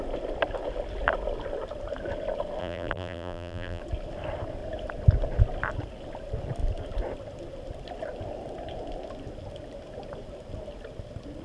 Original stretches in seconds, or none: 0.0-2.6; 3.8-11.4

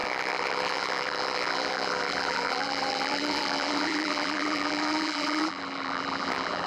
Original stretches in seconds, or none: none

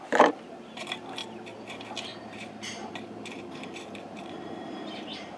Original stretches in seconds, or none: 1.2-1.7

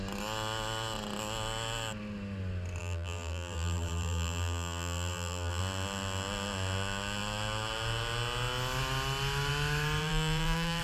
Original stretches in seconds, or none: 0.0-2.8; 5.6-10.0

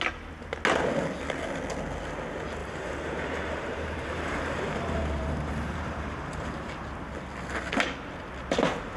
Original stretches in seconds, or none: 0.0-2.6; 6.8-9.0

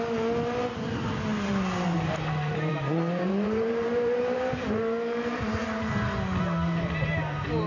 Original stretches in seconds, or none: 0.0-1.3; 5.9-7.7